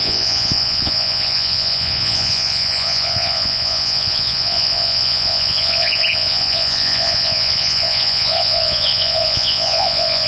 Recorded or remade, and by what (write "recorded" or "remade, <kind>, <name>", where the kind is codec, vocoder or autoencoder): remade, vocoder, Vocos